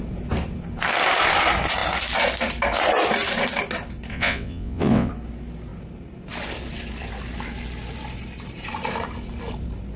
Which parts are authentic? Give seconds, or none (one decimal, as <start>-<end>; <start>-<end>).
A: 0.0-4.1; 5.1-10.0